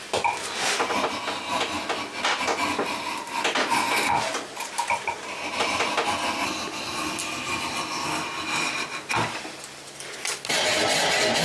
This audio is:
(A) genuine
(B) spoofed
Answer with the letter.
A